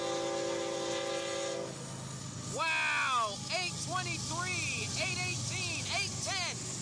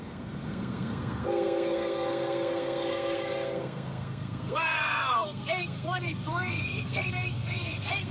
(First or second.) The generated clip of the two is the second